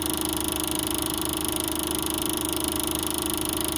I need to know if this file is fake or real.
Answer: real